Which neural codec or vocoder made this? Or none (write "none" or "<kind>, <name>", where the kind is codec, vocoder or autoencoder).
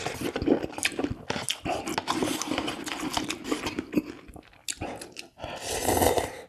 none